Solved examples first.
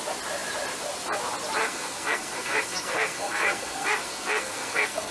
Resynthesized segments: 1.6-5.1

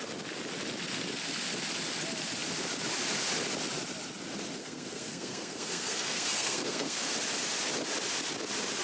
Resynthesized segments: 4.6-7.1

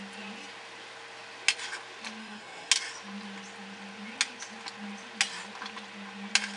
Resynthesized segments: 2.2-2.7

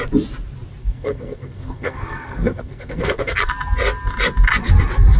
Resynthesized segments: 0.8-3.5